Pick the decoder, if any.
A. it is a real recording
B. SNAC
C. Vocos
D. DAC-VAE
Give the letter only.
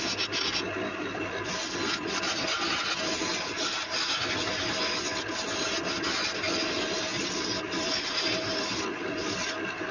A